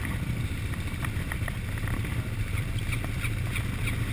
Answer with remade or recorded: remade